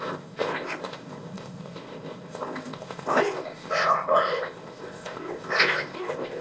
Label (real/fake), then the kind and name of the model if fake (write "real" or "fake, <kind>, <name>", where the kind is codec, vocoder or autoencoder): fake, codec, ZipCodec